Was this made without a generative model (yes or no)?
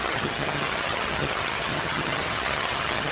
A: no